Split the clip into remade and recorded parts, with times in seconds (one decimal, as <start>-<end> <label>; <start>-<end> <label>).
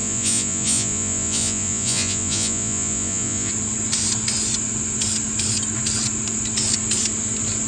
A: 0.0-3.5 remade; 3.5-7.7 recorded